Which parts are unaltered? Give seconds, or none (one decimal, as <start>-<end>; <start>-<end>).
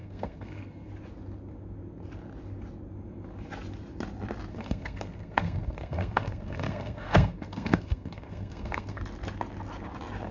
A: 0.9-4.5; 9.0-10.3